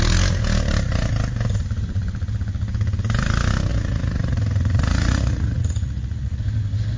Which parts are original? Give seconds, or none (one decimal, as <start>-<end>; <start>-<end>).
0.0-3.7; 6.4-7.0